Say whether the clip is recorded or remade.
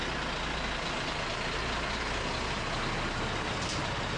recorded